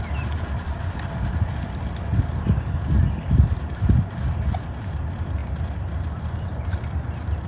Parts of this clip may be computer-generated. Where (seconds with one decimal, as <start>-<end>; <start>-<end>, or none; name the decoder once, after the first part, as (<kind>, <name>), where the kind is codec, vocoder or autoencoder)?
0.0-5.4 (vocoder, BigVGAN v2); 6.3-7.5